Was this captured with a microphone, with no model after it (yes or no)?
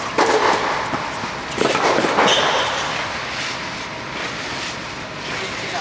yes